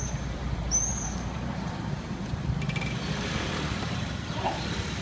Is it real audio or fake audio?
fake